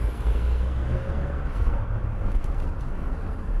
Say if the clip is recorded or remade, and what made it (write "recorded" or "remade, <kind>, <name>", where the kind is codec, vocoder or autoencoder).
remade, codec, SNAC